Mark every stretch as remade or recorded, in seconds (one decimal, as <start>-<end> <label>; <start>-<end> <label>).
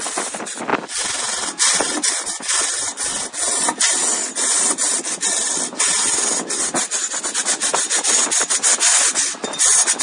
0.0-10.0 recorded